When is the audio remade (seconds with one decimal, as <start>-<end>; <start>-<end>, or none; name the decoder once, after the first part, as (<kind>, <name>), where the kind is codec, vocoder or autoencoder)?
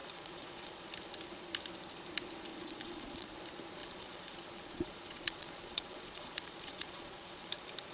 0.0-0.9 (vocoder, Vocos); 2.5-3.3; 3.8-7.5